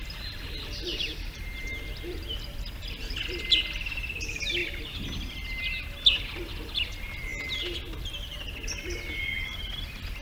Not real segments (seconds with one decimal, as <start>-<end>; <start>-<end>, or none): 0.0-4.6; 6.0-10.2